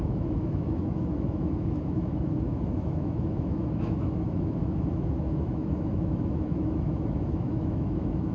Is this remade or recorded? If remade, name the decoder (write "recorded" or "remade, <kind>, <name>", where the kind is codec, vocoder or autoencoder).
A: remade, autoencoder, DAC-VAE